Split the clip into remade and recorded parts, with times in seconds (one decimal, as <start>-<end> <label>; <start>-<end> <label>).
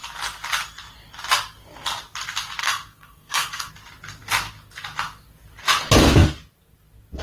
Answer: 0.0-2.6 recorded; 2.6-3.7 remade; 3.7-7.2 recorded